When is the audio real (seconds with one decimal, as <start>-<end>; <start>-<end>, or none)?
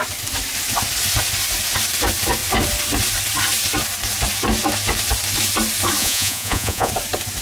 0.0-6.0; 6.9-7.4